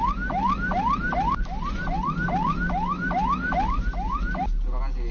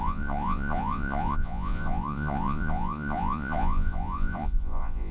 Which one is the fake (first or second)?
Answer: second